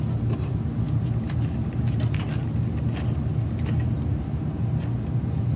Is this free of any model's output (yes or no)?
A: yes